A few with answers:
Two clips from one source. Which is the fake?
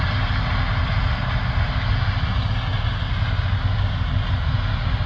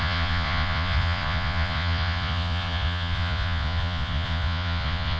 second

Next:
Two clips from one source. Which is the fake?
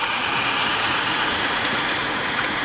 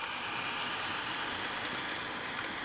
first